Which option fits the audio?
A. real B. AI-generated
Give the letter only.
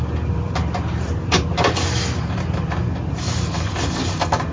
A